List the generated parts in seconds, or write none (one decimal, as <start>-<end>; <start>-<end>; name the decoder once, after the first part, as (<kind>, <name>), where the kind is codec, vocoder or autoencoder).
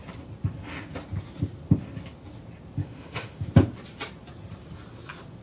2.8-3.4 (autoencoder, DAC-VAE)